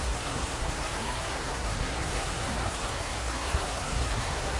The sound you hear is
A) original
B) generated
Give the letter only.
B